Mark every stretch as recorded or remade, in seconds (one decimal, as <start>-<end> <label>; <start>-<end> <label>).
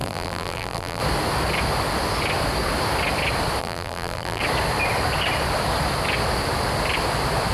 0.0-1.0 remade; 1.0-3.6 recorded; 3.6-4.4 remade; 4.4-7.5 recorded